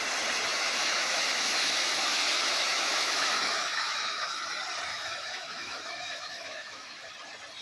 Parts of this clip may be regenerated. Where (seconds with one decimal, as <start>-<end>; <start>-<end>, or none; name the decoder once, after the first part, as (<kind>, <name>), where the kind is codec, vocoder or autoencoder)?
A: 0.5-4.4 (autoencoder, DAC-VAE); 4.9-7.1